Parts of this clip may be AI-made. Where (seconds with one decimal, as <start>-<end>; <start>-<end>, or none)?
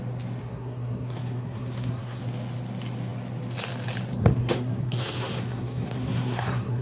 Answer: 0.4-2.2; 4.2-6.8